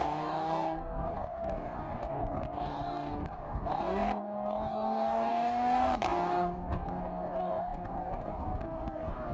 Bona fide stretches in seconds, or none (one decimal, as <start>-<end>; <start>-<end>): none